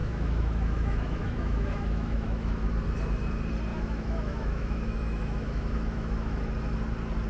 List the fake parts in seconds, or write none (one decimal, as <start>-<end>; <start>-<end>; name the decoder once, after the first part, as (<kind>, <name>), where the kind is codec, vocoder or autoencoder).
0.0-2.7 (autoencoder, DAC-VAE); 3.7-6.4

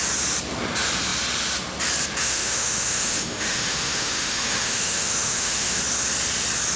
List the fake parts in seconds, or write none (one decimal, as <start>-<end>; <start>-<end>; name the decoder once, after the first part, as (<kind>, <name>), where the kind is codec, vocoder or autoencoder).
2.2-5.8 (autoencoder, DAC-VAE)

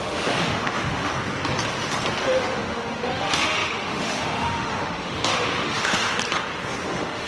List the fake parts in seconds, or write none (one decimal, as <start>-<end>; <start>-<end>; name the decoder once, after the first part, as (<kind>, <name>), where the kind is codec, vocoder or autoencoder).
0.0-1.1 (autoencoder, DAC-VAE); 2.2-6.1; 6.8-7.3

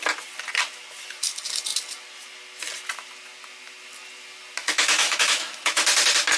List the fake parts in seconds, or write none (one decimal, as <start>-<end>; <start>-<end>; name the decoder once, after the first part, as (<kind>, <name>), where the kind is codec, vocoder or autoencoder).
4.6-5.8 (autoencoder, DAC-VAE)

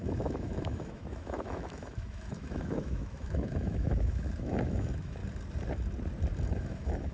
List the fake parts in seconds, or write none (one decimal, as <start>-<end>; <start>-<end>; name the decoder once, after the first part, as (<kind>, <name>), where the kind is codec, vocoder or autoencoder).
0.0-5.2 (autoencoder, DAC-VAE); 6.5-7.1

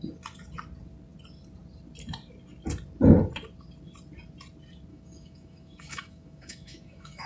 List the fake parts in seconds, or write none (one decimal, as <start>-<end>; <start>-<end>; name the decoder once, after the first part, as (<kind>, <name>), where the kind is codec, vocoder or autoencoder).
4.9-7.3 (autoencoder, DAC-VAE)

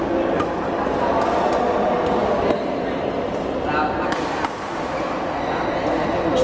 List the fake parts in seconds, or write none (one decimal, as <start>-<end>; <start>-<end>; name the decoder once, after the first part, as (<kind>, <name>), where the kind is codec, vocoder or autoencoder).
none